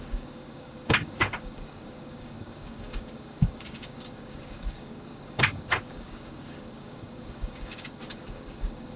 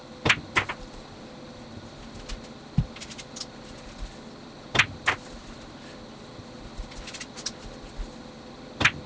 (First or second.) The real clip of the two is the second